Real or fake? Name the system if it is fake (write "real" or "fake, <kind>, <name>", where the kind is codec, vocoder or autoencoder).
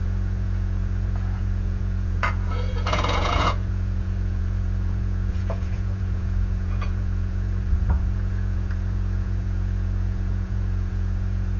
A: fake, vocoder, Vocos